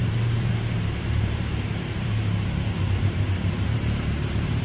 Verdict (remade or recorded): remade